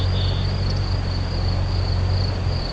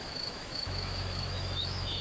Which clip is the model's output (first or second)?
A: second